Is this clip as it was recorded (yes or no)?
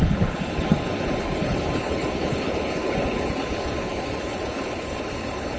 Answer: no